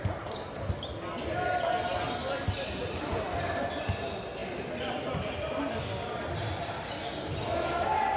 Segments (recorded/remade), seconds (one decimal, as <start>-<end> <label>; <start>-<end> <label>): 0.0-2.8 recorded; 2.8-3.6 remade; 3.6-4.4 recorded; 4.4-5.6 remade; 5.6-8.2 recorded